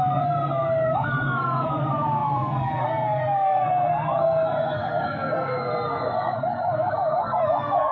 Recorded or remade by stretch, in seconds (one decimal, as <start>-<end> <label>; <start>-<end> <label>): 0.0-7.9 remade